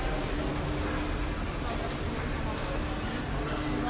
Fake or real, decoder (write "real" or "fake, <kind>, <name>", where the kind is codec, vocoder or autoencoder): real